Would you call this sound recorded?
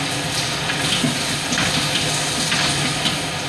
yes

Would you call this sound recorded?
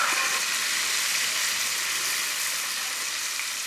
no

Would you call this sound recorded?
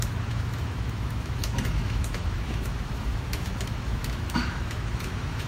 no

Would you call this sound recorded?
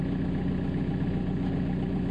yes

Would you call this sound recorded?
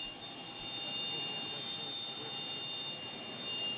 yes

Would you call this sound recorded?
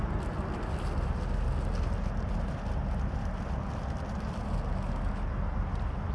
yes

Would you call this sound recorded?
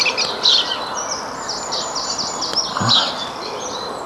yes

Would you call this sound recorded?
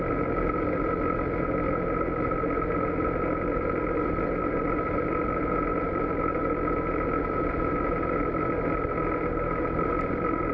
yes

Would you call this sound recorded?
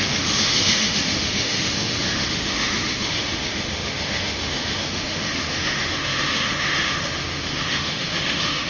no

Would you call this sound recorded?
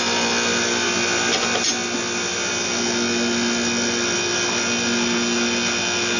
yes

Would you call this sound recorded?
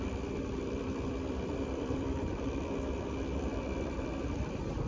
no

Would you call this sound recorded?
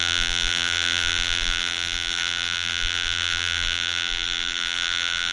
no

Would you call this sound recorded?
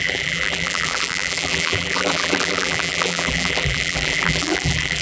no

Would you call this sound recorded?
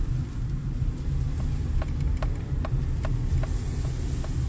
yes